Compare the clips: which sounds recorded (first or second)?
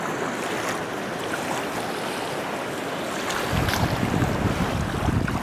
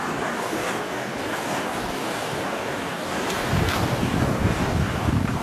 first